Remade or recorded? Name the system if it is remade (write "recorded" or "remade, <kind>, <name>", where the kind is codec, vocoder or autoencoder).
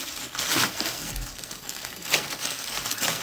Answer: remade, codec, SNAC